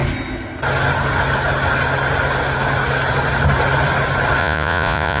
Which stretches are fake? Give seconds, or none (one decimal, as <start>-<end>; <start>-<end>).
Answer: 4.4-5.2